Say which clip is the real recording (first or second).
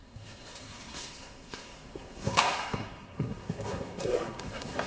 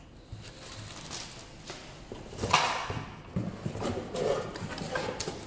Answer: second